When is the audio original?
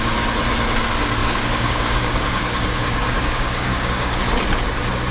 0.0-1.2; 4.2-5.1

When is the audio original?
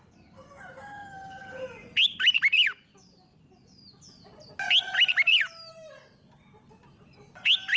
0.0-7.8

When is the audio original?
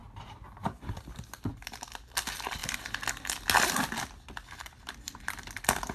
0.9-5.9